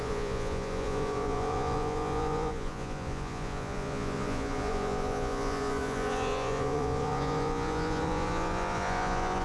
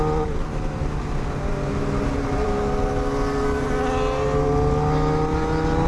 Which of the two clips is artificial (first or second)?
first